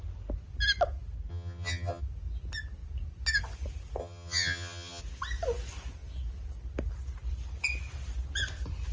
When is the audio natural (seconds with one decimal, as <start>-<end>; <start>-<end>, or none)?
0.0-1.3; 2.0-4.0; 5.0-8.9